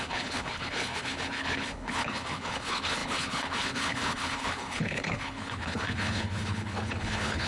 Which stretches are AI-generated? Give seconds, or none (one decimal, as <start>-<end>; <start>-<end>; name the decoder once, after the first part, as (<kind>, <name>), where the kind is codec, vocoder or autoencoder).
0.0-7.5 (codec, HILCodec)